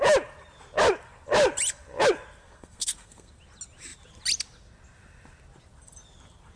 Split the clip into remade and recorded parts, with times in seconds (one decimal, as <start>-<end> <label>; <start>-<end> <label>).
0.0-2.4 recorded; 2.4-3.4 remade; 3.4-6.6 recorded